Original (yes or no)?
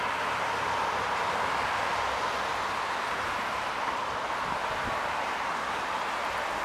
no